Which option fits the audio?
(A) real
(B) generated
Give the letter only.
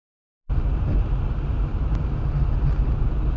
A